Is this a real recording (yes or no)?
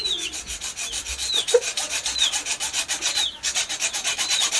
yes